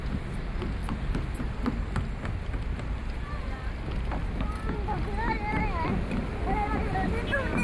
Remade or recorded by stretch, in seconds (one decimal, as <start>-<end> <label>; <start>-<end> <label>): 0.0-7.6 recorded